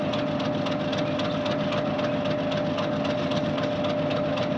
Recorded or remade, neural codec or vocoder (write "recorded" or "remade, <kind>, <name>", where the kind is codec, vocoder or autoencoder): recorded